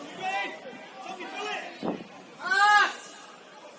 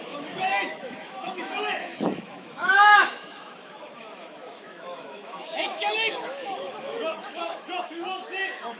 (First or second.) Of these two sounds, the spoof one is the second